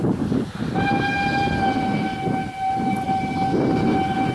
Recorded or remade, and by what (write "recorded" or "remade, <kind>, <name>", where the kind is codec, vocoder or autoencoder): recorded